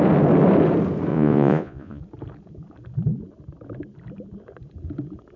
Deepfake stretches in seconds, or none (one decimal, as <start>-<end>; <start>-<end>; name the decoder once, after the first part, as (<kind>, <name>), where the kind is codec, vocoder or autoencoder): 1.1-2.0 (vocoder, Vocos)